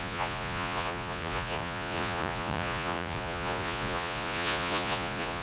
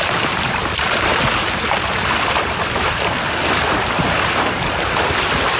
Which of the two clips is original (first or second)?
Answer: second